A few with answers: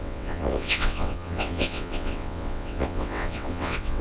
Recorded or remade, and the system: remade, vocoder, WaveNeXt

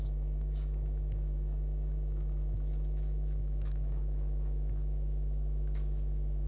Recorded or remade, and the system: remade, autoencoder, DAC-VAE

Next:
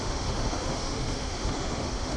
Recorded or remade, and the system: remade, autoencoder, DAC-VAE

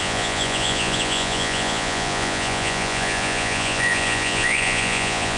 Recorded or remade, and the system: remade, vocoder, Vocos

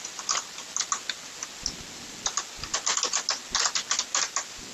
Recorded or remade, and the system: recorded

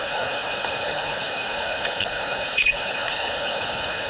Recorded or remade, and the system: remade, codec, HILCodec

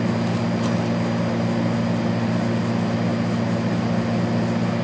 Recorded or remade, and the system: recorded